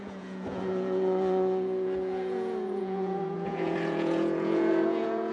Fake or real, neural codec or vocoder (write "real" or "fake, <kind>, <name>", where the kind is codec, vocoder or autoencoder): fake, vocoder, Vocos